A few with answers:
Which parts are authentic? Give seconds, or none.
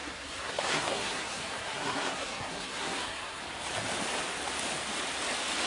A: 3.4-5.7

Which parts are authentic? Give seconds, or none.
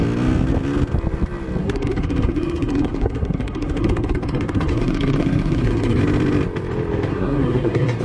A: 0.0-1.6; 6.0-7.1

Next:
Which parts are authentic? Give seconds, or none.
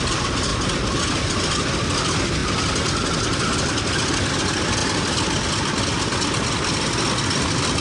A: 0.0-7.8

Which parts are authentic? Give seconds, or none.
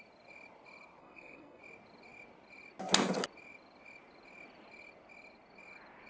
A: 0.0-1.0; 1.6-6.1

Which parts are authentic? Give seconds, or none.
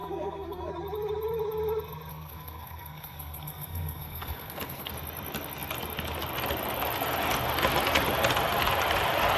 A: 0.7-2.1; 4.9-9.4